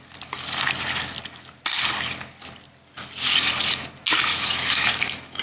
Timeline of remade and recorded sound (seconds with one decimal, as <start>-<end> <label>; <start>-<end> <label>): 0.0-4.3 recorded; 4.3-5.4 remade